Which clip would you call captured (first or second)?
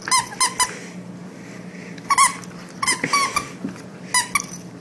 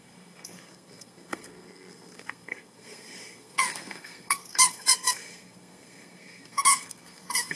first